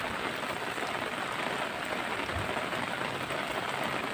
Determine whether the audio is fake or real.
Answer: real